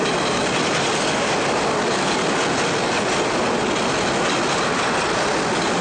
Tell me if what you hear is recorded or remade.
recorded